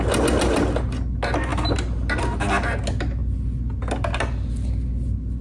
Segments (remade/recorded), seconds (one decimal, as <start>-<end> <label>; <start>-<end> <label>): 0.0-5.4 recorded